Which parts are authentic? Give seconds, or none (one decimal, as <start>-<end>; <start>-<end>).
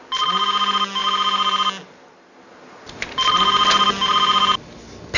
0.0-5.2